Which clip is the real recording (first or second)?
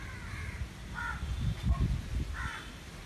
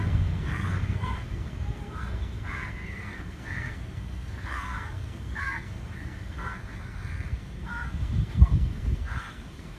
first